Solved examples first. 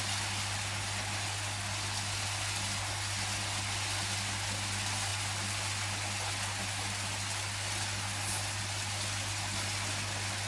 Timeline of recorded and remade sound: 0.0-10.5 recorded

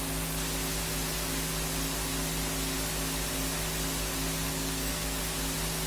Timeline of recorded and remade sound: 0.0-4.5 recorded; 4.5-5.2 remade; 5.2-5.9 recorded

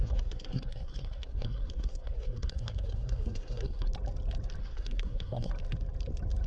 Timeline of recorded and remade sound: 0.0-3.9 remade; 3.9-4.6 recorded; 4.6-5.5 remade; 5.5-6.5 recorded